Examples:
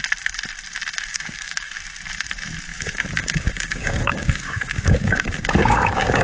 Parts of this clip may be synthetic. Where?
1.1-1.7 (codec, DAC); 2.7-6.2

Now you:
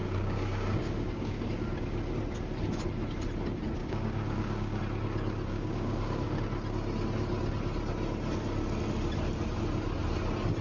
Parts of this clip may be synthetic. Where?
0.0-1.4 (codec, DAC); 3.8-4.8; 5.5-6.4

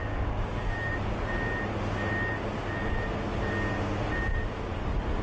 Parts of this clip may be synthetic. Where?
0.0-0.9 (codec, DAC)

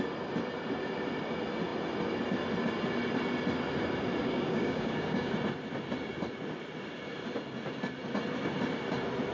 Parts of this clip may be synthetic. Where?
4.2-5.3 (codec, DAC)

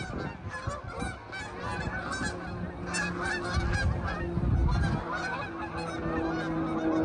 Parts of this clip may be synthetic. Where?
none

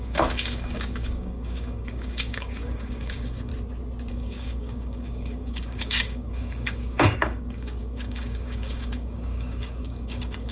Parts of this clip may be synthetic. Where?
0.0-3.5 (codec, DAC); 4.1-10.5

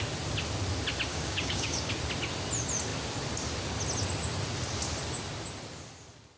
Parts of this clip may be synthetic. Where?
1.1-1.9 (codec, DAC)